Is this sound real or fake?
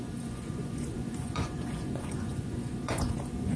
fake